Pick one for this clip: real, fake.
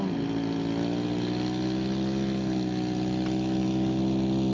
real